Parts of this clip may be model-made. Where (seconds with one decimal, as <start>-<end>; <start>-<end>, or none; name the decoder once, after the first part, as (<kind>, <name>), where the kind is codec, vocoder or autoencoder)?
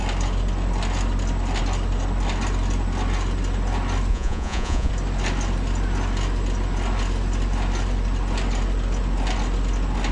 4.1-4.9 (vocoder, Vocos)